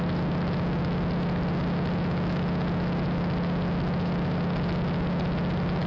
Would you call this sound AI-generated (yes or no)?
no